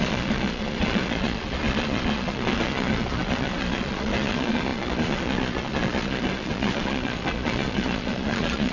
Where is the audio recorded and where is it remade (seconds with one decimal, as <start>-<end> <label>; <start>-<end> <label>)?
0.0-8.7 remade